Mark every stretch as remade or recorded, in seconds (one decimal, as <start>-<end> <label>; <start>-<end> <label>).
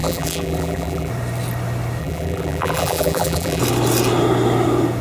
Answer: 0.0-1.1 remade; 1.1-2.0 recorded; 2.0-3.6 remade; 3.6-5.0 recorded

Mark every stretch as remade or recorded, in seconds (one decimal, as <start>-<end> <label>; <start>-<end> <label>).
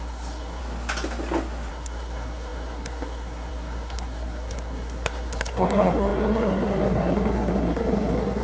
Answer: 0.0-0.6 remade; 0.6-1.7 recorded; 1.7-8.4 remade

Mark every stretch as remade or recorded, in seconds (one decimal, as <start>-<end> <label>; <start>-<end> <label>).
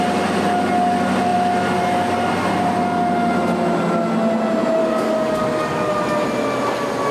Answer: 0.0-4.8 recorded; 4.8-5.9 remade; 5.9-7.1 recorded